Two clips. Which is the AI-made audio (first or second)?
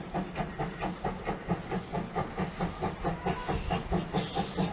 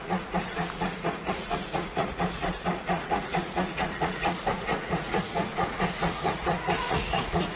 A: second